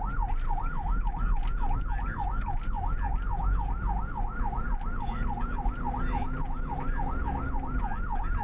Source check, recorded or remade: recorded